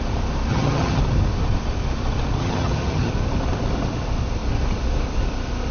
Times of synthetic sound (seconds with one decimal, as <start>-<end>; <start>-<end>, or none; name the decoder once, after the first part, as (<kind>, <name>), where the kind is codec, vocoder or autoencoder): 0.5-1.0 (vocoder, HiFi-GAN); 2.4-3.1